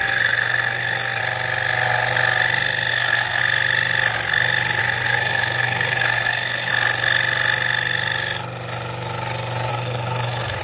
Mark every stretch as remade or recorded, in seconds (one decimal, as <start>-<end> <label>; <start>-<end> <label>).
0.0-1.2 remade; 1.2-2.9 recorded; 2.9-3.4 remade; 3.4-4.8 recorded; 4.8-6.7 remade; 6.7-9.7 recorded; 9.7-10.6 remade